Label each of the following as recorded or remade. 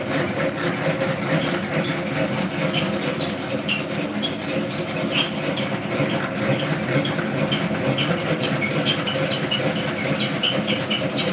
recorded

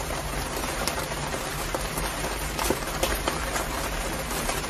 remade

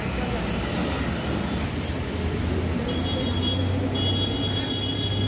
recorded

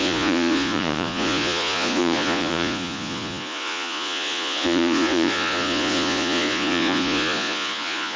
remade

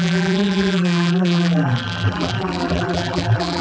remade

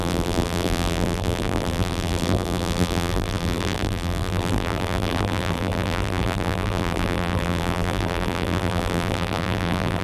remade